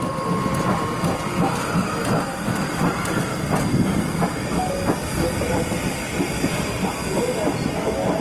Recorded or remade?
recorded